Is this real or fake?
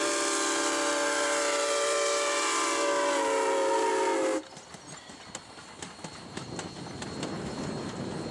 real